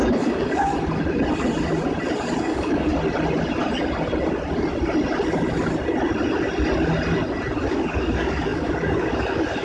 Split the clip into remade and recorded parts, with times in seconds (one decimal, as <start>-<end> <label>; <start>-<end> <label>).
0.0-0.7 remade; 0.7-2.4 recorded; 2.4-2.9 remade; 2.9-7.7 recorded; 7.7-9.6 remade